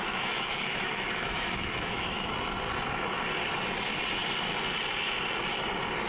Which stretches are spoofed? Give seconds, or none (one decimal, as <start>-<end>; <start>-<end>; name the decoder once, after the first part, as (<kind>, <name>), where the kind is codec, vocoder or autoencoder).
0.0-2.3 (autoencoder, DAC-VAE)